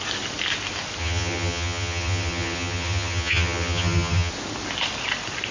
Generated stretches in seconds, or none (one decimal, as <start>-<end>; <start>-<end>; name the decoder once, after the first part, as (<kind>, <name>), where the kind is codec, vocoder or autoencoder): 1.0-4.3 (vocoder, HiFi-GAN)